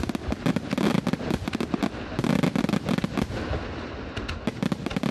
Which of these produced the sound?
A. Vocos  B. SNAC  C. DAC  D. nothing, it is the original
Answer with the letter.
D